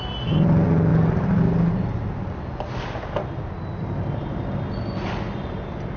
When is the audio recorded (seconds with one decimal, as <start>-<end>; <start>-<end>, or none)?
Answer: 0.0-6.0

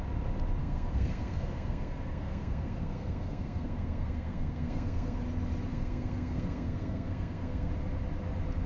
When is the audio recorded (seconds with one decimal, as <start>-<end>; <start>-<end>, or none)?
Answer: 0.0-0.6; 5.2-5.7; 7.7-8.7

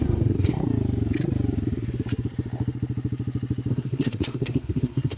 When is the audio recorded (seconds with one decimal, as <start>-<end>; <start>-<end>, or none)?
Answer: 0.6-3.7

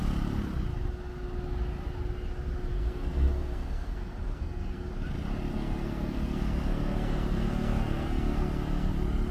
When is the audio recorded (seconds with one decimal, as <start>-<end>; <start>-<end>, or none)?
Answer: 0.0-2.7; 4.9-5.5; 8.9-9.3

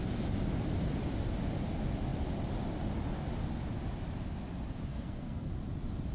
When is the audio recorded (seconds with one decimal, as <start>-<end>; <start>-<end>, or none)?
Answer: 0.0-4.9; 5.5-6.1

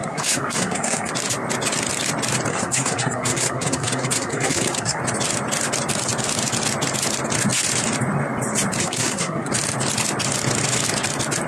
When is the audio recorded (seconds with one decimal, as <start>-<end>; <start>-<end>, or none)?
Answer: 1.1-2.5; 5.0-8.8; 9.5-11.5